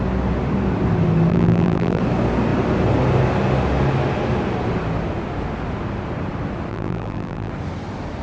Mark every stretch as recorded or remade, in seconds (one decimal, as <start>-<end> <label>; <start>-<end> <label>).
0.0-1.3 recorded; 1.3-2.0 remade; 2.0-6.7 recorded; 6.7-7.5 remade; 7.5-8.2 recorded